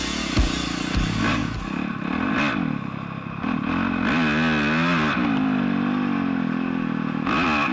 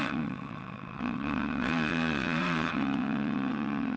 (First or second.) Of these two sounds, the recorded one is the first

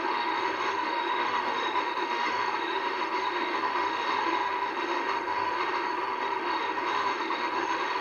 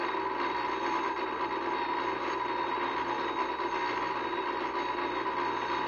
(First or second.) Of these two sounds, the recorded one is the second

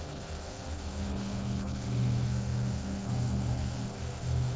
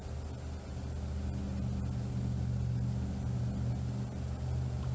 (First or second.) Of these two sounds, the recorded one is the second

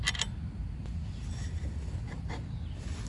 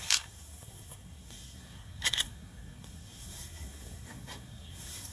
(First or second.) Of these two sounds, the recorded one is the first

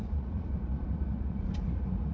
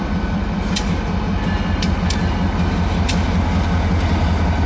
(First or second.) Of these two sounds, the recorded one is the second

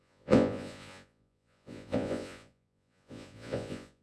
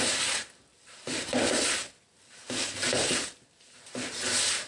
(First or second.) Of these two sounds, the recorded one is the second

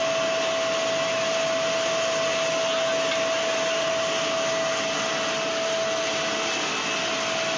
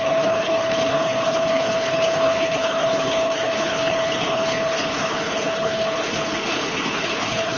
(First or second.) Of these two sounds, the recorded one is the first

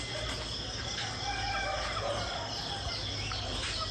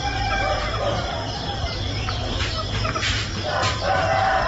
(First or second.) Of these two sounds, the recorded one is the first